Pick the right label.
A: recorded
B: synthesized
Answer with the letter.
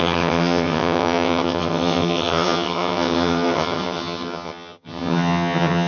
B